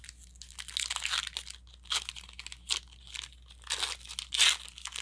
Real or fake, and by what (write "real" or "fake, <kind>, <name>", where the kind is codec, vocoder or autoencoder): real